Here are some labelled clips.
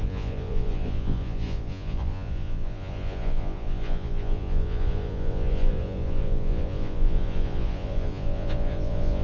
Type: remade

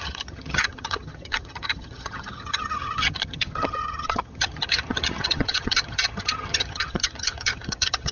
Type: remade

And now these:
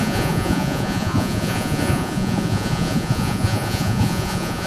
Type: remade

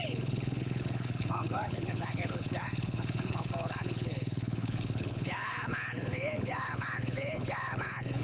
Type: remade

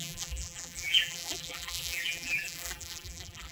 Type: remade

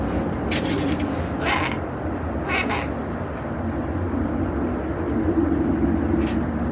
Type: recorded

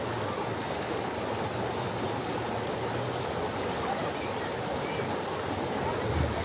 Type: recorded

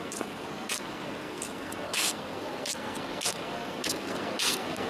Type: remade